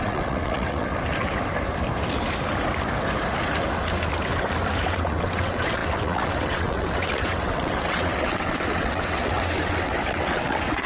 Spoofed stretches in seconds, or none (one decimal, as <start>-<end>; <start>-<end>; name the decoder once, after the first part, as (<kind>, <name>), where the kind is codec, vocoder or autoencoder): 0.0-0.9 (vocoder, WaveNeXt); 4.9-10.9